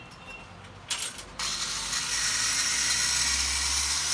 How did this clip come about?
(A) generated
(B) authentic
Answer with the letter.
B